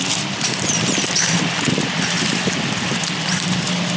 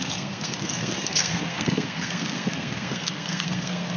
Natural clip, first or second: first